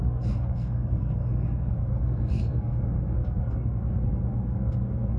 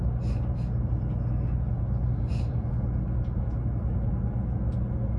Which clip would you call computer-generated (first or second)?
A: first